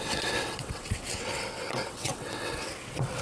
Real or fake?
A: fake